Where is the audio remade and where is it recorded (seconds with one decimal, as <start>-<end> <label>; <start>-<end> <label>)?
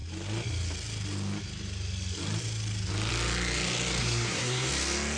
0.0-4.0 recorded; 4.0-4.7 remade; 4.7-5.2 recorded